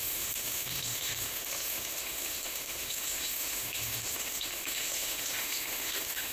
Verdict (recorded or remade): remade